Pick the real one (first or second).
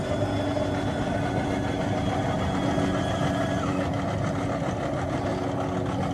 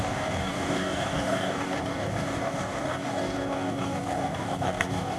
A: first